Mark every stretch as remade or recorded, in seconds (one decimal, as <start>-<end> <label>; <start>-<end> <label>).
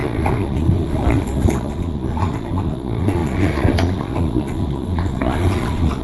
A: 0.0-6.0 remade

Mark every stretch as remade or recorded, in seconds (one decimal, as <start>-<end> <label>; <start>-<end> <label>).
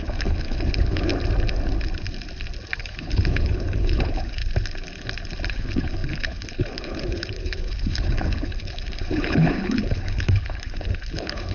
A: 0.0-1.1 remade; 1.1-2.8 recorded; 2.8-4.4 remade; 4.4-5.5 recorded; 5.5-11.5 remade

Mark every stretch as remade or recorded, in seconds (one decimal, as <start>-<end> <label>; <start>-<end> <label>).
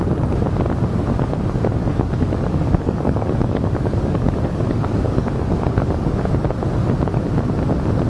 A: 0.0-1.8 recorded; 1.8-6.2 remade; 6.2-8.1 recorded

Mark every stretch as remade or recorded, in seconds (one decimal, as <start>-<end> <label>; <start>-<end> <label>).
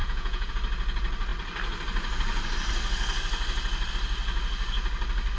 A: 0.0-0.5 remade; 0.5-5.4 recorded